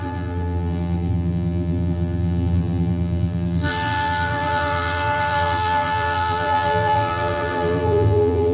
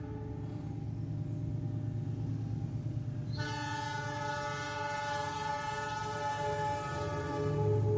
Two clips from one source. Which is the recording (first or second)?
second